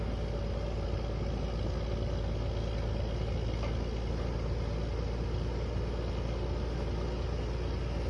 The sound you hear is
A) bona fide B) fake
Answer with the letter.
A